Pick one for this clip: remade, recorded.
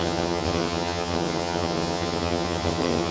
remade